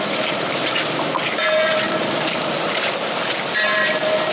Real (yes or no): yes